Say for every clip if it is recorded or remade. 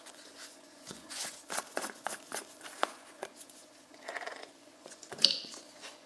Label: remade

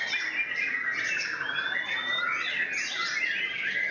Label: recorded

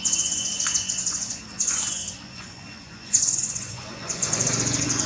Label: remade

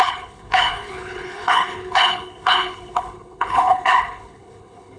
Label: remade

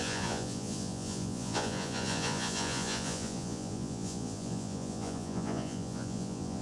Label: remade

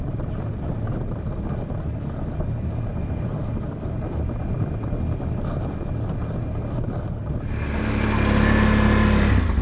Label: recorded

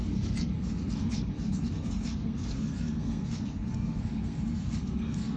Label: remade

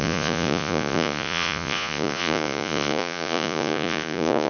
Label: remade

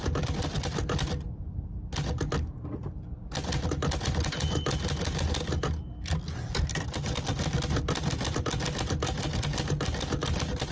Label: recorded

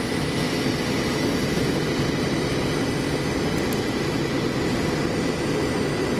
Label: recorded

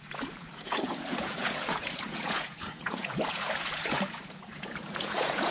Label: remade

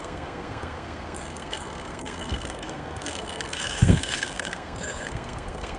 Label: remade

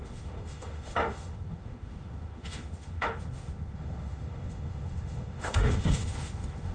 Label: remade